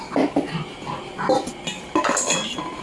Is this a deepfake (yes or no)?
no